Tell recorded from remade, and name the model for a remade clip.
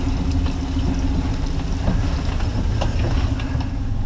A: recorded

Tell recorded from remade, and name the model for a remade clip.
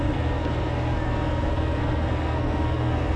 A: remade, codec, SNAC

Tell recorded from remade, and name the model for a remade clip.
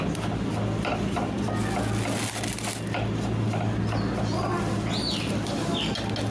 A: recorded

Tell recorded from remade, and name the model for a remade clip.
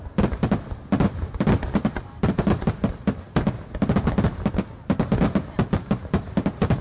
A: recorded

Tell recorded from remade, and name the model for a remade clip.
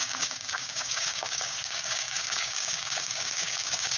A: remade, codec, DAC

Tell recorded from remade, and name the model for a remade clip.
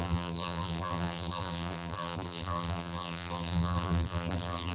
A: remade, vocoder, BigVGAN v2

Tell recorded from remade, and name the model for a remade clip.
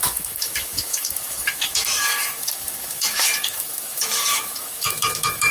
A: remade, autoencoder, DAC-VAE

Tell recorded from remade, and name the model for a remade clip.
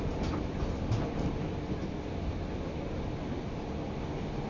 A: recorded